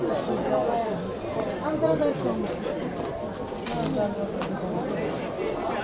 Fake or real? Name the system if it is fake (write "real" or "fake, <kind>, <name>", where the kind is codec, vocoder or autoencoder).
real